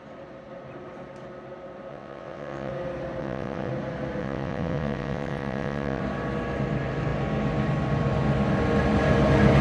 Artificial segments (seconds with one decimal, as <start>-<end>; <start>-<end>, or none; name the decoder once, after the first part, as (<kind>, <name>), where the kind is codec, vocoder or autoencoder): 1.9-2.7 (vocoder, WaveNeXt); 3.2-3.7; 4.2-6.0